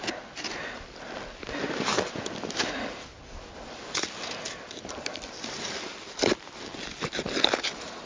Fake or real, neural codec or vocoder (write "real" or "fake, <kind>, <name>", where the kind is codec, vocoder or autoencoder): real